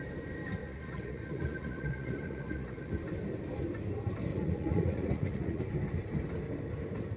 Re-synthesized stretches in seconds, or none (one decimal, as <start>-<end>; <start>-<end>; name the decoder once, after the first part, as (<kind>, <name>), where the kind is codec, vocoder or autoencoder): 0.6-2.9 (vocoder, Vocos); 4.3-5.6